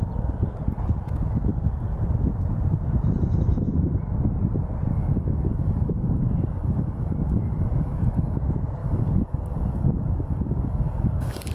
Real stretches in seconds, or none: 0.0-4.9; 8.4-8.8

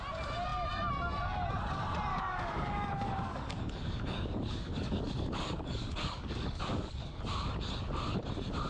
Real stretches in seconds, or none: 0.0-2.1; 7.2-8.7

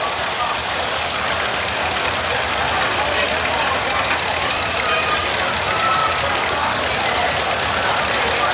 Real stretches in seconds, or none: 0.0-0.6; 1.2-6.0; 6.8-8.5

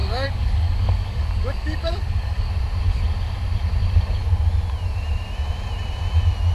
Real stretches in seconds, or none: 2.5-6.5

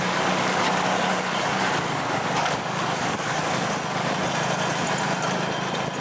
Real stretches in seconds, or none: 3.6-6.0